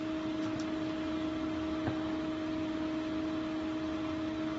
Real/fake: real